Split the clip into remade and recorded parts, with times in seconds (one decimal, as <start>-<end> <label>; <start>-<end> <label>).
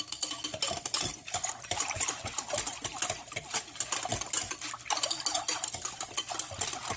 0.0-7.0 recorded